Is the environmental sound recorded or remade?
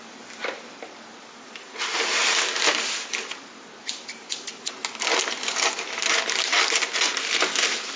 recorded